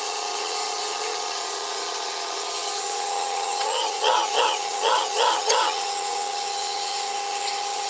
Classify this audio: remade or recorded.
remade